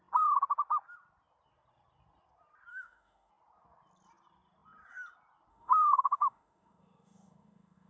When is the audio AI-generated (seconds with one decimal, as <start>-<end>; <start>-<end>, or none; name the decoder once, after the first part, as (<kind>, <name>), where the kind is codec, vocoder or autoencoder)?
2.7-3.3 (autoencoder, DAC-VAE); 5.5-7.9